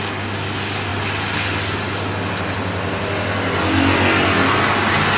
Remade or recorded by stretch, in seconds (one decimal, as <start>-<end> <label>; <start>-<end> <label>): 0.0-5.2 recorded